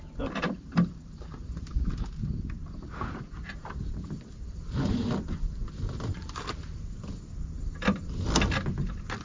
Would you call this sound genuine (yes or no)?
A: no